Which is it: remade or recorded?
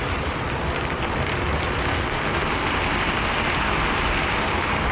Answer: recorded